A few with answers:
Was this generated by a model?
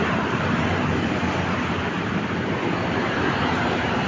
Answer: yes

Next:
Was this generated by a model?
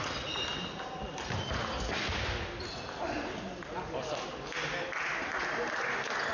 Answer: no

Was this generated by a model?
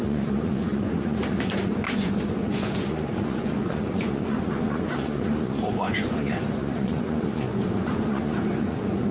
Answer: yes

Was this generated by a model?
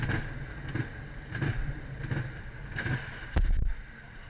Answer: no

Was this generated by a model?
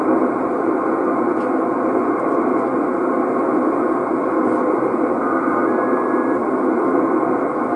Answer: no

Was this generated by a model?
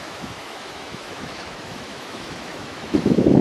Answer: yes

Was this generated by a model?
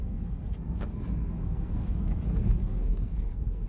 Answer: yes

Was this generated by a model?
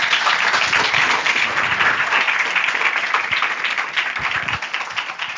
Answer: no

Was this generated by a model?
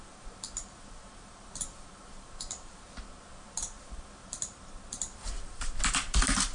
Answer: yes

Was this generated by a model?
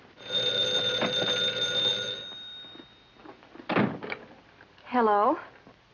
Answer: no